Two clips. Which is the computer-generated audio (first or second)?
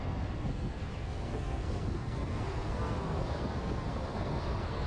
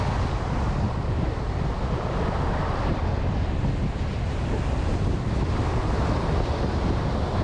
first